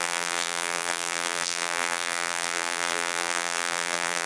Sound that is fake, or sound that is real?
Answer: fake